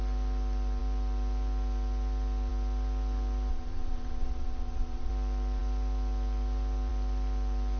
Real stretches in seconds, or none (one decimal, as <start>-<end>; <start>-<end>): 0.0-3.5; 5.1-7.8